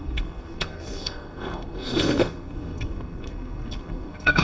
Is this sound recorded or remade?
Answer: remade